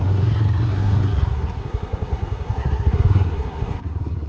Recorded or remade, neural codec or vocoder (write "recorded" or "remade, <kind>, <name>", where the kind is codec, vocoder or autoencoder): remade, codec, SNAC